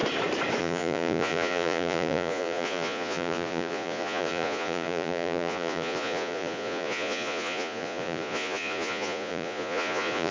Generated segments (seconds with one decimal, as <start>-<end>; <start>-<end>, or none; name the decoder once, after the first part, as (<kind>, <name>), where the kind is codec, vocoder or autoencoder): 0.6-10.3 (vocoder, Vocos)